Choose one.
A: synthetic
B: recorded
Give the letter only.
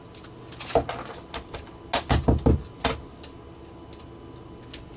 B